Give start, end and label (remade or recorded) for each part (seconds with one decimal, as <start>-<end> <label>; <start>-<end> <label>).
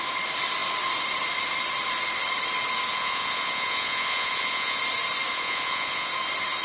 0.0-2.9 recorded; 2.9-4.8 remade; 4.8-5.3 recorded; 5.3-6.1 remade; 6.1-6.6 recorded